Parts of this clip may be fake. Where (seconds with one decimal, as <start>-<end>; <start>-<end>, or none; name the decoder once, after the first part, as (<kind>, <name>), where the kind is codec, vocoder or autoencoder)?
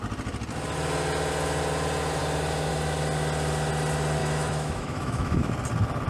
4.2-5.5 (autoencoder, DAC-VAE)